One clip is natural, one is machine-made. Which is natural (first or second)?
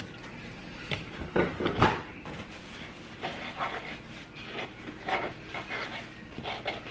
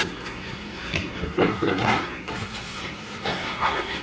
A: first